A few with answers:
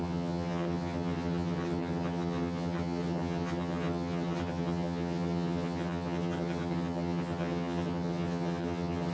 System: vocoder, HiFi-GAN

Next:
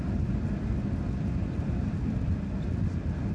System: none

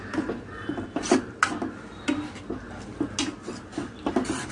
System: none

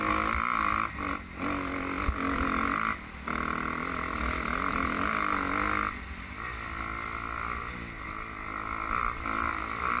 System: none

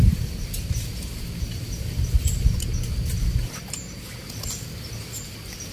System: none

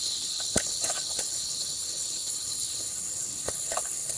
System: codec, HILCodec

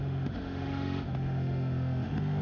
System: autoencoder, DAC-VAE